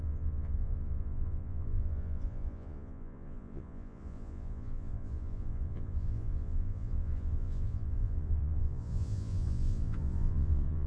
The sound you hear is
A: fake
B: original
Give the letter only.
A